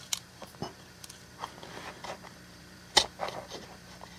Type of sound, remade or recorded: remade